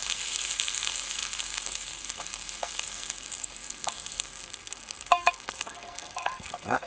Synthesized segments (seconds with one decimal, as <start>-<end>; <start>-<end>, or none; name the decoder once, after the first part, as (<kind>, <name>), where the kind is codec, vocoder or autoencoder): 0.0-6.9 (codec, SNAC)